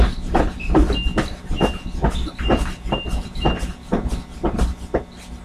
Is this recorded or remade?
recorded